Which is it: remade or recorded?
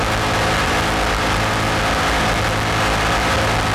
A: recorded